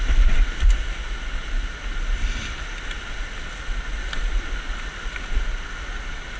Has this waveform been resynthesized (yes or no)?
no